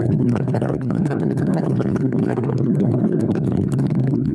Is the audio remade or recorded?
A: remade